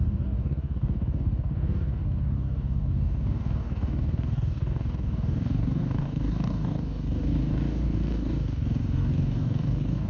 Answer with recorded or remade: remade